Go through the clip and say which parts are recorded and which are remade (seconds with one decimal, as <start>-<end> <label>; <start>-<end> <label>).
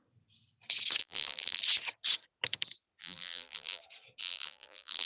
0.0-1.0 recorded; 1.0-1.6 remade; 1.6-3.0 recorded; 3.0-3.8 remade; 3.8-4.2 recorded; 4.2-5.1 remade